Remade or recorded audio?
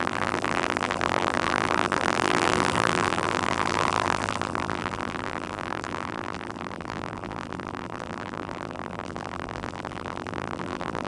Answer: remade